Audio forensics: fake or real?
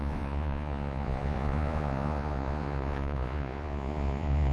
fake